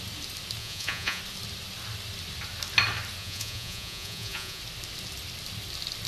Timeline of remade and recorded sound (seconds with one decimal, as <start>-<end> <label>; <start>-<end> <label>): 0.0-0.6 recorded; 0.6-1.2 remade; 1.2-3.2 recorded; 3.2-4.6 remade; 4.6-6.1 recorded